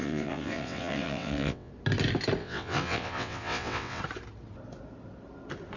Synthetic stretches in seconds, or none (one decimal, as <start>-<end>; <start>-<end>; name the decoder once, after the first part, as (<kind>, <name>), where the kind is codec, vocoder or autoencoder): 0.0-1.7 (vocoder, WaveNeXt); 2.4-4.0